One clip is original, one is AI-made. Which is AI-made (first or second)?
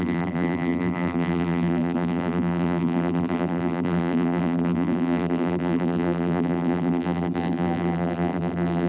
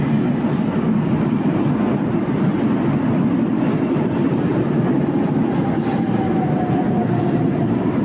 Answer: first